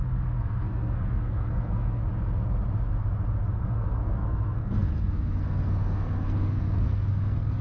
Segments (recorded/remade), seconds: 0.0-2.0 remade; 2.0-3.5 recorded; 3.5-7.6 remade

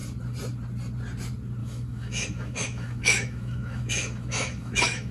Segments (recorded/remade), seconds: 0.0-1.6 recorded; 1.6-5.1 remade

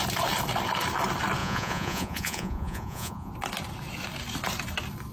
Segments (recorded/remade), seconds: 0.0-1.4 recorded; 1.4-3.3 remade; 3.3-5.1 recorded

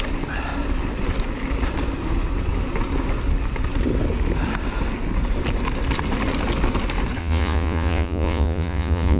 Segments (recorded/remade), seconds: 0.0-7.2 recorded; 7.2-9.2 remade

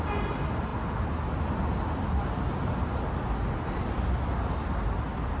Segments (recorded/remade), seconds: 0.0-5.4 recorded

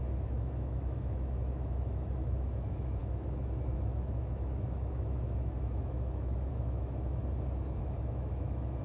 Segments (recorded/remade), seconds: 0.0-7.2 remade; 7.2-7.8 recorded; 7.8-8.8 remade